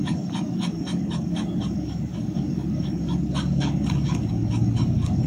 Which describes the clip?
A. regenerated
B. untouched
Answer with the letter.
A